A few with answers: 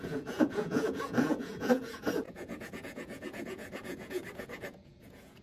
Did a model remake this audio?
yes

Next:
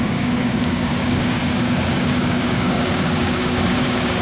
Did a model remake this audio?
yes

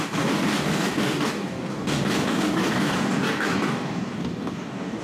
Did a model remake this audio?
yes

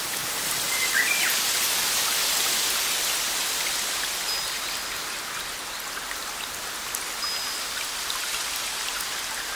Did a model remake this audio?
no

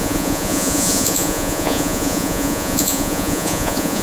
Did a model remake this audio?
yes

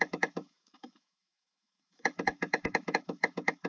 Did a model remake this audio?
yes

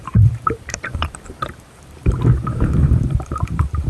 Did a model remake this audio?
yes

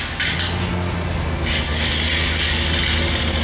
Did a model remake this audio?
no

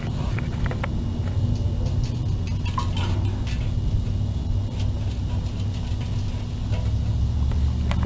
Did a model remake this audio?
no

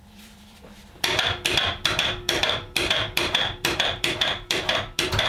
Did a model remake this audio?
yes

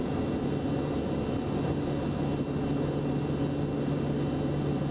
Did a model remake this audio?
no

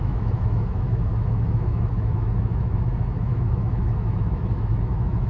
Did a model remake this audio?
yes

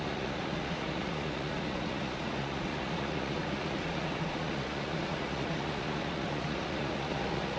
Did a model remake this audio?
yes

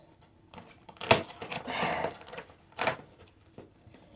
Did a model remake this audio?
no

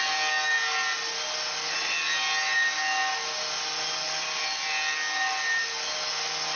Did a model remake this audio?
no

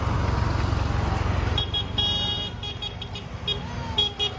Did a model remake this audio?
no